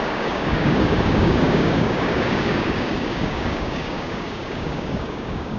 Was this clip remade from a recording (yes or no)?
yes